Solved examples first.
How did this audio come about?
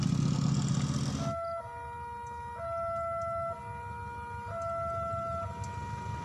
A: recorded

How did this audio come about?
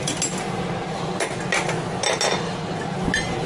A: recorded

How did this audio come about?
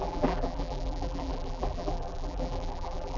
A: remade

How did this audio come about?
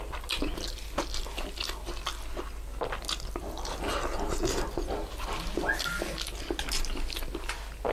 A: recorded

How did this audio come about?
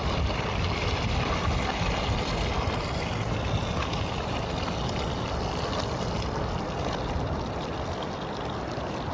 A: recorded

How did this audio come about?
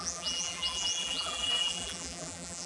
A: remade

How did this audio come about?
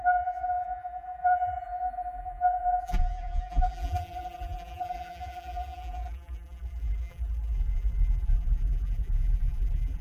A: remade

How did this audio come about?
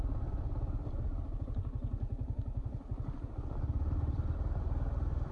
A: remade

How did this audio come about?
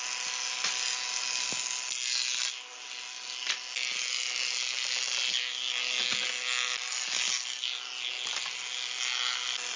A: recorded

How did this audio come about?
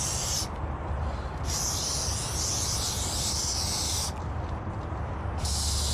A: recorded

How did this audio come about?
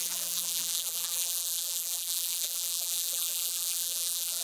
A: remade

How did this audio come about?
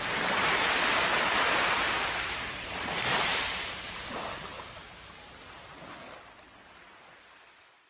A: recorded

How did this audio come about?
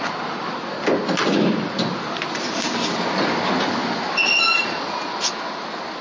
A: recorded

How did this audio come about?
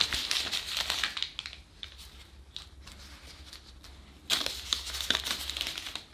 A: recorded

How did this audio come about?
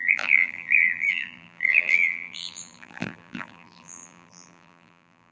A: remade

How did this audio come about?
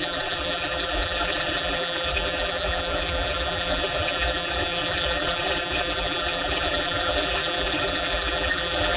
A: remade